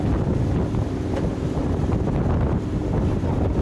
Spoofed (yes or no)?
no